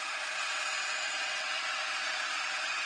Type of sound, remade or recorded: remade